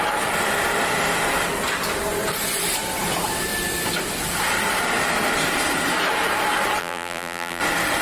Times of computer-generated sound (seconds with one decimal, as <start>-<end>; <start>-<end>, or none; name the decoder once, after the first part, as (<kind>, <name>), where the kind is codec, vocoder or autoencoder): 6.8-7.6 (vocoder, BigVGAN v2)